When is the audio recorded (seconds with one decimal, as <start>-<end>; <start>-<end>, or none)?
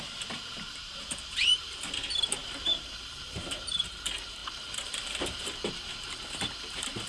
4.4-5.4